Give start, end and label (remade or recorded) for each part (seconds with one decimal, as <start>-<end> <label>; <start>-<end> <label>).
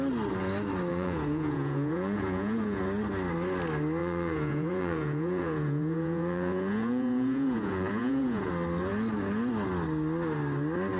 0.0-0.9 recorded; 0.9-2.8 remade; 2.8-4.0 recorded; 4.0-8.5 remade; 8.5-11.0 recorded